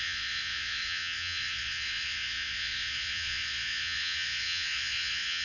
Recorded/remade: remade